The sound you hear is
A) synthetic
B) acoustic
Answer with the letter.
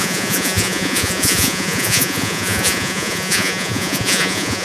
A